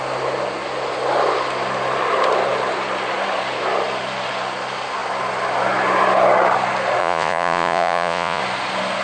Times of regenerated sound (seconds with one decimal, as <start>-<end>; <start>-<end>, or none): 7.0-8.4